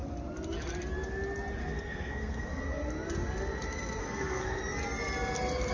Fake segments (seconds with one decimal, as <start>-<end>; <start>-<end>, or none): 1.6-2.6; 4.0-4.6